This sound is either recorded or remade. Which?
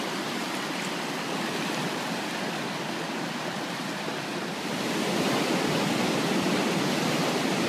recorded